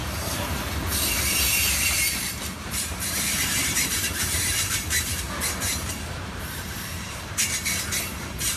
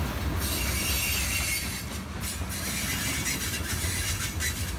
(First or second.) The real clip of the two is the second